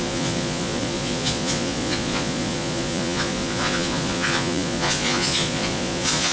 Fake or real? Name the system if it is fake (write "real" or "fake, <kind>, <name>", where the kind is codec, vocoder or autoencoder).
fake, vocoder, Vocos